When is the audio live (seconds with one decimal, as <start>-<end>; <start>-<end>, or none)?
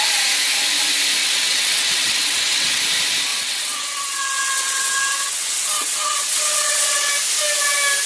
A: 0.0-1.2; 2.8-3.3; 7.1-8.1